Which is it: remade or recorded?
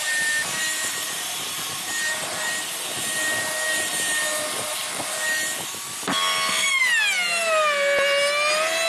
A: recorded